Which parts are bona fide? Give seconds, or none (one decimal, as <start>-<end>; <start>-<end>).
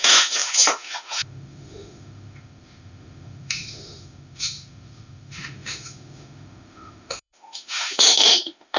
none